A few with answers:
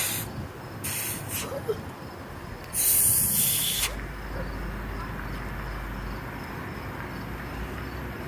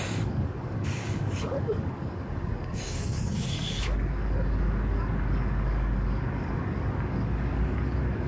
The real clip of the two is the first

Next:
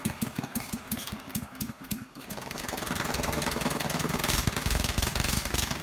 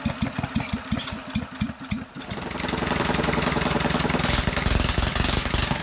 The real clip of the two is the second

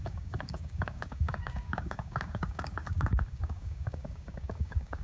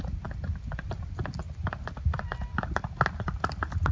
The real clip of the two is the second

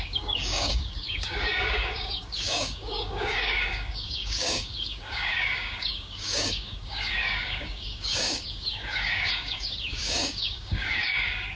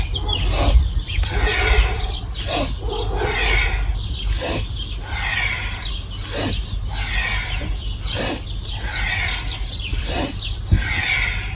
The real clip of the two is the second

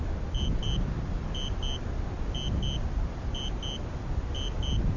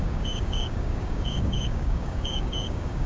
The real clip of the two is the first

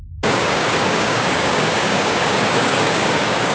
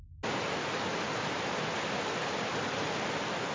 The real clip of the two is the second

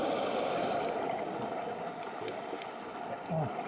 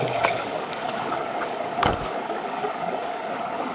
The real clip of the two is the first